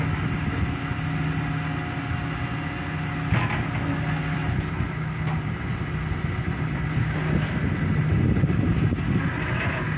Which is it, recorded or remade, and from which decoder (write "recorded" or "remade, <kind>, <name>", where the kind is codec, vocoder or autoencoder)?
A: recorded